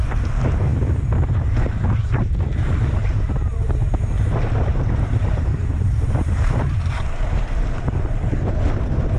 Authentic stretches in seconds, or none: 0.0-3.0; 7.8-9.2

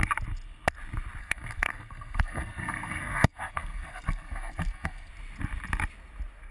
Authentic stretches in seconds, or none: 0.0-1.2; 5.1-6.5

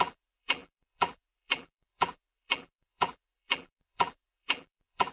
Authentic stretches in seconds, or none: none

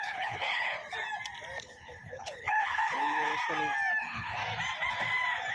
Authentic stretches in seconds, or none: 0.8-1.6; 3.3-4.0; 4.4-5.5

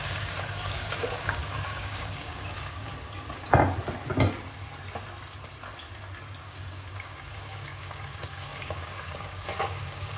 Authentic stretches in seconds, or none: 2.9-6.4

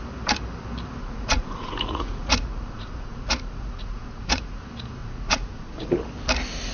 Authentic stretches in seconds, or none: 0.0-1.0; 4.6-5.0; 5.9-6.7

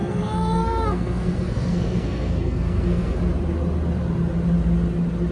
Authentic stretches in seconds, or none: 3.2-5.3